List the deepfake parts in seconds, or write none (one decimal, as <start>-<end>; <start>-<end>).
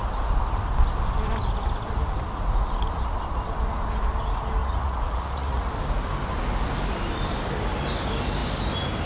4.6-5.7